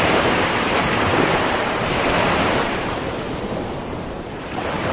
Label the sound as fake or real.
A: fake